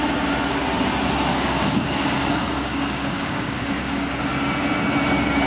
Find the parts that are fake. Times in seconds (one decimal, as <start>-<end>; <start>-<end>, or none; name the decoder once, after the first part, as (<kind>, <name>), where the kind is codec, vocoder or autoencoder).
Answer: 1.3-4.2 (codec, DAC)